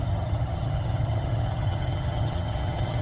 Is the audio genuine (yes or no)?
no